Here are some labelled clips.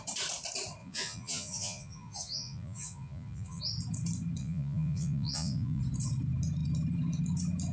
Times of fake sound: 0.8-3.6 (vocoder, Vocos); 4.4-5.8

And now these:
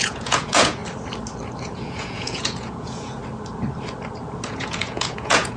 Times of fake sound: 0.0-0.8 (vocoder, Vocos); 1.6-3.2; 4.5-5.6

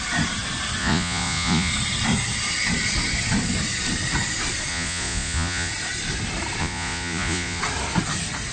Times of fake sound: 0.8-1.7 (vocoder, Vocos); 4.7-5.7; 6.6-7.6

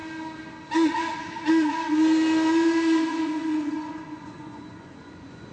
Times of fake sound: 3.0-5.5 (vocoder, Vocos)

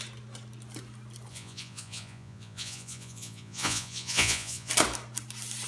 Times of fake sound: 1.3-4.7 (vocoder, Vocos)

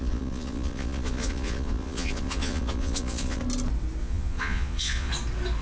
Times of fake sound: 0.0-3.4 (vocoder, Vocos); 4.0-5.1

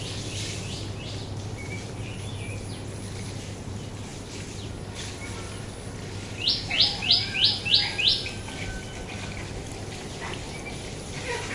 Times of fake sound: none